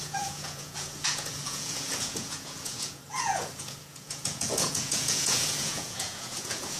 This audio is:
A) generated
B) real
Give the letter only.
A